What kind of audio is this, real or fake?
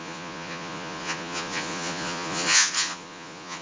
fake